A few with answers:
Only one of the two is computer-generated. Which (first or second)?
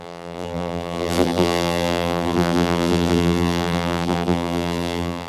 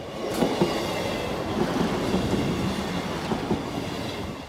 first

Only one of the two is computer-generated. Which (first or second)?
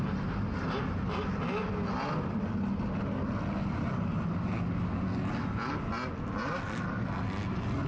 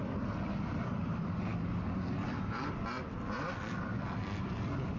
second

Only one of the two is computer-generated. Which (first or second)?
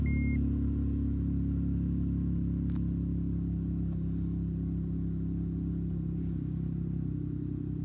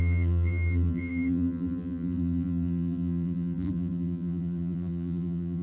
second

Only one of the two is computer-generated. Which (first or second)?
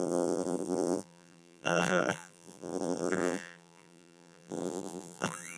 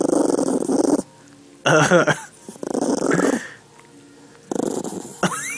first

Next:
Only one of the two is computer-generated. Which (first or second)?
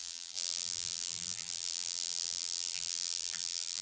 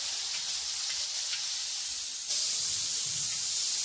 first